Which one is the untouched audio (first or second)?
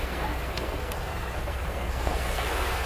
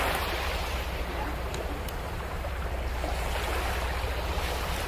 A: second